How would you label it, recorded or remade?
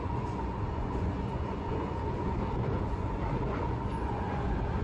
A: remade